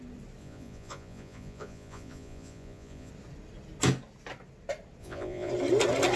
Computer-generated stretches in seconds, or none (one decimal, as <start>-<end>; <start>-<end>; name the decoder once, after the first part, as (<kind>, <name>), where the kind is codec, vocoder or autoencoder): 0.4-3.1 (vocoder, Vocos); 5.0-5.5